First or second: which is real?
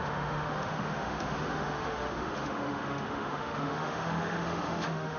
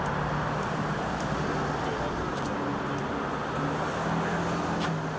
second